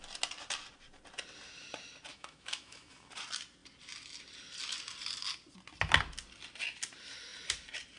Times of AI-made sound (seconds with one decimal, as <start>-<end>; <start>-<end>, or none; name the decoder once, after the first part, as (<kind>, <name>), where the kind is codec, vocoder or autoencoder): 2.1-3.1 (autoencoder, DAC-VAE)